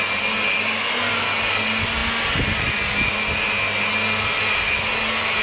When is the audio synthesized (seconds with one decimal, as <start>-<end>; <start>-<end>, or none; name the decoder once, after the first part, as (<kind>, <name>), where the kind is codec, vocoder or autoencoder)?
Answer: none